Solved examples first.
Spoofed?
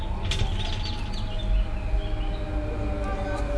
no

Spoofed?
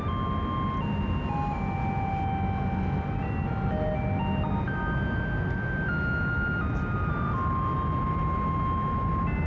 no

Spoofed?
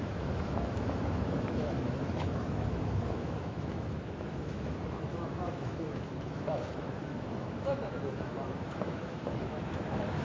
yes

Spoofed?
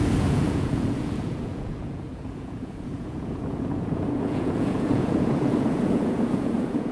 yes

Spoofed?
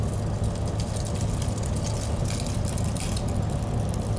no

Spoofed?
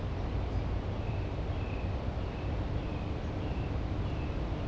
no